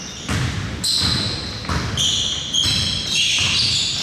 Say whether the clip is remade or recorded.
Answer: recorded